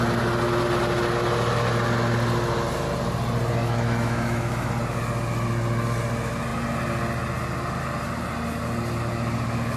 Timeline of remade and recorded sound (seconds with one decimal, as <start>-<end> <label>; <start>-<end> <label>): 0.0-3.6 recorded; 3.6-4.7 remade; 4.7-9.8 recorded